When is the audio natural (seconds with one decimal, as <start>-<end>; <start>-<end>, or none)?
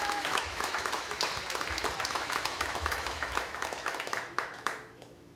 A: 1.3-2.1